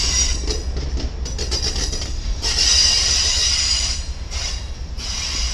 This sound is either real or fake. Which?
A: real